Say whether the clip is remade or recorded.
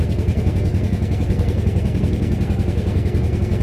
remade